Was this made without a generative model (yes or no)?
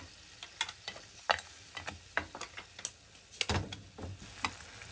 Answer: yes